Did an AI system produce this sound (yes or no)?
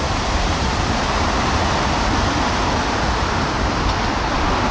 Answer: no